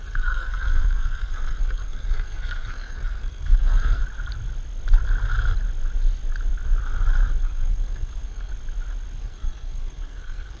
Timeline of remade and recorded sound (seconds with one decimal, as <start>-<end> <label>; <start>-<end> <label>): 0.0-4.0 remade; 4.0-7.4 recorded; 7.4-8.5 remade; 8.5-9.2 recorded; 9.2-10.6 remade